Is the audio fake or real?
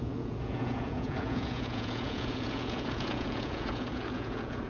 fake